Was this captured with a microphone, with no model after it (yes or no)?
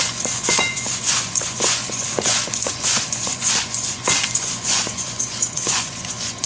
no